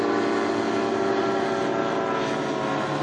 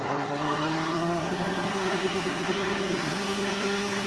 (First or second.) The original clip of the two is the first